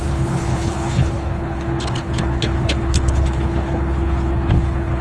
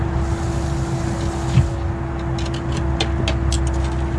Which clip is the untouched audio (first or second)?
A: second